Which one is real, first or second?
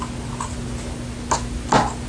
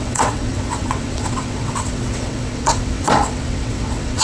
first